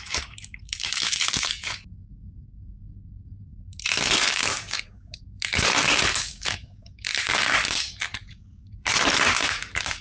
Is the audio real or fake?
fake